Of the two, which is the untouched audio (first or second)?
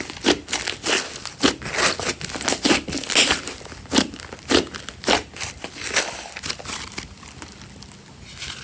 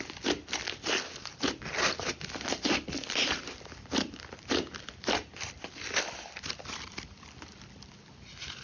first